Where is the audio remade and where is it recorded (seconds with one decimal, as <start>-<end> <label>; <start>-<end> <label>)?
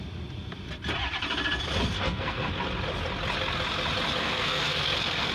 0.0-2.0 recorded; 2.0-2.5 remade; 2.5-4.2 recorded; 4.2-5.3 remade